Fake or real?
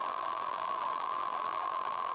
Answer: fake